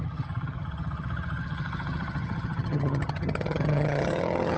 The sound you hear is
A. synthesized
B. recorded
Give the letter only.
A